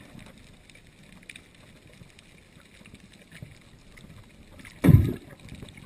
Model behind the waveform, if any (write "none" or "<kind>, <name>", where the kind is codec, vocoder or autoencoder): none